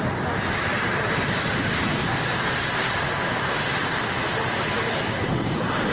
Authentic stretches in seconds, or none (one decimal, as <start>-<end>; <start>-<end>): 0.0-0.7; 1.6-2.0; 3.0-4.2; 5.2-5.9